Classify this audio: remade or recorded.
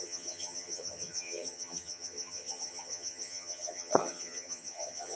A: remade